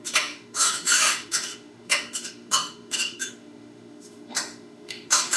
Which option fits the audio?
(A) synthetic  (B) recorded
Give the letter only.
A